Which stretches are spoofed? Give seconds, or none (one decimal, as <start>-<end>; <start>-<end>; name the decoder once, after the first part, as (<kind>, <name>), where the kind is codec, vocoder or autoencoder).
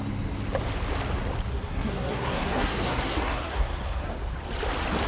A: 1.5-4.1 (codec, SNAC)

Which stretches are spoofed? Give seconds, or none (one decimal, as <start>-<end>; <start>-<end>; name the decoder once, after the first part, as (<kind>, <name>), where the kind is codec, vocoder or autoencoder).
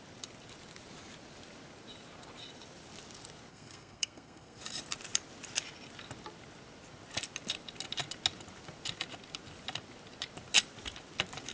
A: 3.5-4.6 (codec, SNAC)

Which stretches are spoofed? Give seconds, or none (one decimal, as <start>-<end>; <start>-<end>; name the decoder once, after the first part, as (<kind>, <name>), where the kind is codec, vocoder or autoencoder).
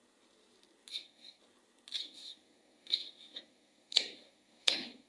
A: 0.9-1.4 (codec, SNAC); 2.0-5.1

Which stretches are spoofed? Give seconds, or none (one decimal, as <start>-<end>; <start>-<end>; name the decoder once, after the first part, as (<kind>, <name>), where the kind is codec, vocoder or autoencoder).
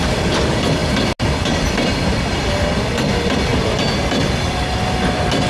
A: none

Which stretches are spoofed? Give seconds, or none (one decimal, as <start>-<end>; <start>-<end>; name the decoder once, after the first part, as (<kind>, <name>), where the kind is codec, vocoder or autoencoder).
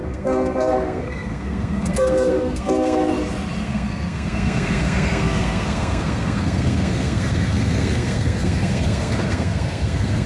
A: 0.0-3.1 (codec, SNAC); 3.6-10.3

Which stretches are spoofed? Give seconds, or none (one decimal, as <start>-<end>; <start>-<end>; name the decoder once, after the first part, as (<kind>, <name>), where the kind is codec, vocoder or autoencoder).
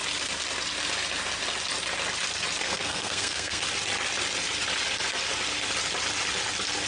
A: 2.6-3.6 (codec, SNAC)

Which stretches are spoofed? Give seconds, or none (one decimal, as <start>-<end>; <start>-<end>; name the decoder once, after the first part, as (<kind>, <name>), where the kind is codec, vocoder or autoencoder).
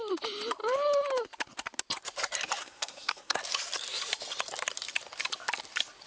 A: 2.6-3.4 (codec, SNAC)